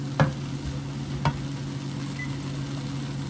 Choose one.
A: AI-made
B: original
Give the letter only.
B